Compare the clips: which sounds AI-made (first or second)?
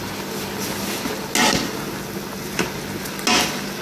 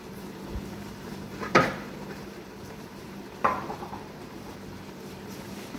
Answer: second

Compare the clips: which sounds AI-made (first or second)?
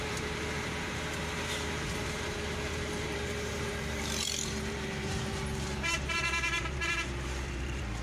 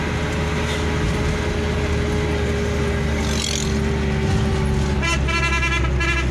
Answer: first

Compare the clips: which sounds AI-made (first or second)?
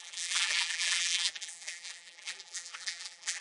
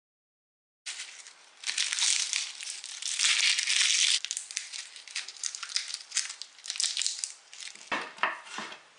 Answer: first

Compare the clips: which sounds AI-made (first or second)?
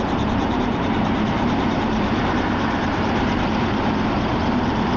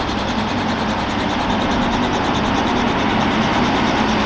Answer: first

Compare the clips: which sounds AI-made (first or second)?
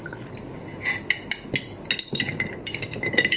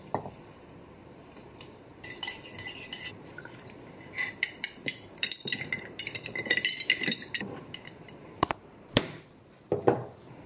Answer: second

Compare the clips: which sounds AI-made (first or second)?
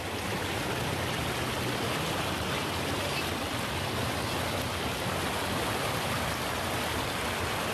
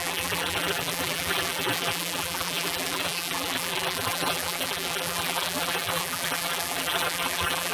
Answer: second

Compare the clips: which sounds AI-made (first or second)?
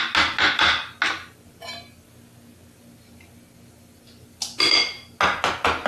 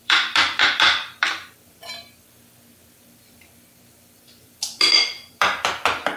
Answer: second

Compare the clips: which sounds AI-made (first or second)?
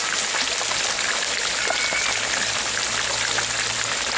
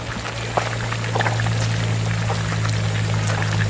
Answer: first